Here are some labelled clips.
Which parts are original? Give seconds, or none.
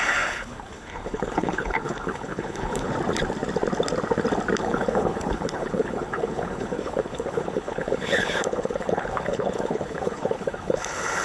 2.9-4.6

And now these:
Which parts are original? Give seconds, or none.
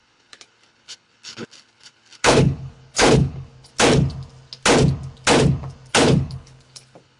3.7-5.9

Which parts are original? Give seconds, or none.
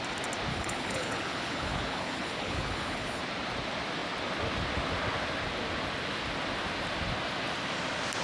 0.0-0.5; 3.2-8.2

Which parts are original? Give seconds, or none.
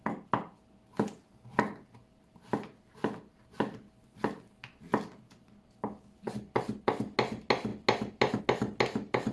0.0-9.3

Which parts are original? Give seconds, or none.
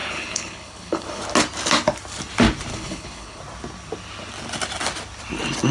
1.2-2.7; 3.4-5.7